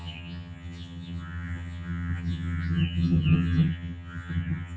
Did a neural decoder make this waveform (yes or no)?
yes